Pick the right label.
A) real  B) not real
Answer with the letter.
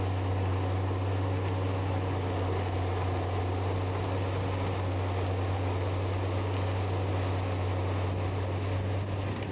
A